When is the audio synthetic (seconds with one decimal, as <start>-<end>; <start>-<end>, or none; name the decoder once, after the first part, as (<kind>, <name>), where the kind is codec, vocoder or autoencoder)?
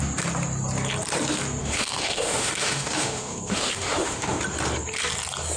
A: 1.6-4.4 (autoencoder, DAC-VAE)